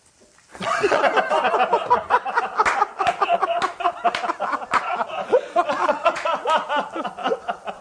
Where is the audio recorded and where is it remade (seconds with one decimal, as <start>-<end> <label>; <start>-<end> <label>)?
0.0-0.5 recorded; 0.5-1.0 remade; 1.0-5.2 recorded; 5.2-6.4 remade; 6.4-7.8 recorded